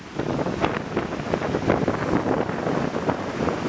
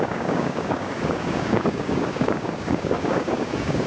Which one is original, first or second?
first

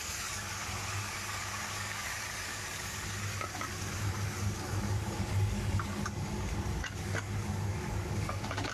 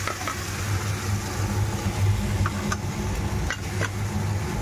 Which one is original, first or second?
second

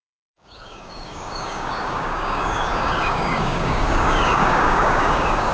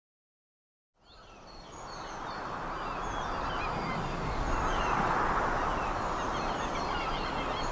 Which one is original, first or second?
second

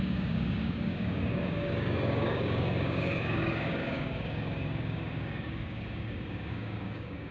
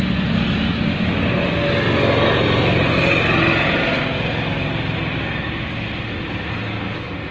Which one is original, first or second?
second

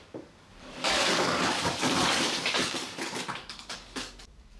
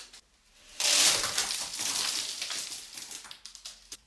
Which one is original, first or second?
second